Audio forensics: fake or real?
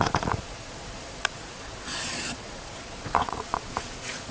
fake